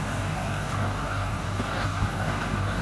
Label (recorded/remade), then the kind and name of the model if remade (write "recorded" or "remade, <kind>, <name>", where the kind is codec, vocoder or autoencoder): remade, codec, DAC